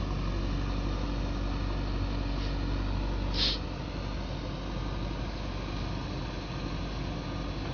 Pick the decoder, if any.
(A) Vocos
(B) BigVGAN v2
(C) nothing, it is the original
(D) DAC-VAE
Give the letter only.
C